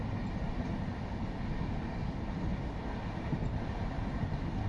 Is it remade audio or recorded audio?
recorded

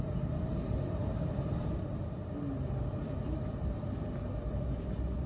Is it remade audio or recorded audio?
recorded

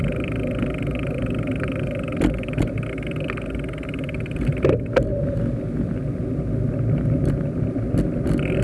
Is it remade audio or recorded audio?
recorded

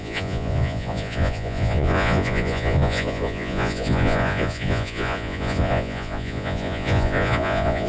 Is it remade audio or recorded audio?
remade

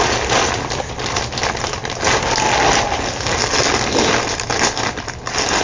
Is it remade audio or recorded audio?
recorded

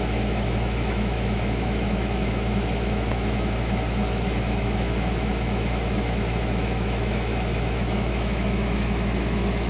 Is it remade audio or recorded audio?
remade